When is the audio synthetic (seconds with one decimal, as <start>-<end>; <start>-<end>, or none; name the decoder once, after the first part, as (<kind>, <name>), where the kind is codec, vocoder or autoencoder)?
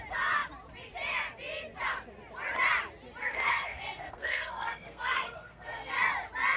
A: 3.2-5.9 (codec, SNAC)